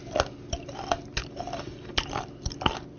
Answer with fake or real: real